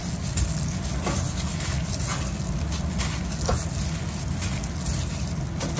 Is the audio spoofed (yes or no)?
no